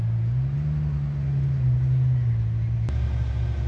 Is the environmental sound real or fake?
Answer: real